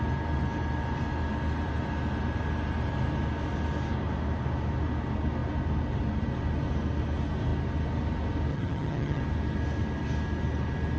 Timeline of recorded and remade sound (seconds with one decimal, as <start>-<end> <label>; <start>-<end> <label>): 0.0-8.5 recorded; 8.5-9.2 remade; 9.2-11.0 recorded